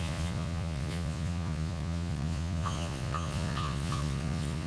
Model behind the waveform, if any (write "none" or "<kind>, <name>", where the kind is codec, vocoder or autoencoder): vocoder, Vocos